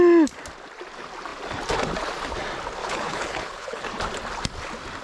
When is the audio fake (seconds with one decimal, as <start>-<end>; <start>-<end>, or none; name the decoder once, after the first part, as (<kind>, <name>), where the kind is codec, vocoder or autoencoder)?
2.8-3.9 (codec, HILCodec)